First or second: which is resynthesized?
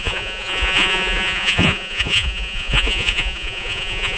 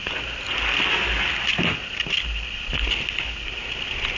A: first